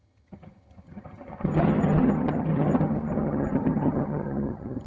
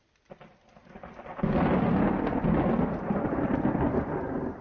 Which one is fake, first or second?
first